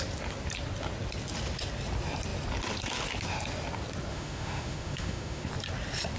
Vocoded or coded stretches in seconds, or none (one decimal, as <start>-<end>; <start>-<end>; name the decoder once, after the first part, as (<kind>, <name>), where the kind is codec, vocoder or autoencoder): 4.1-5.5 (autoencoder, DAC-VAE)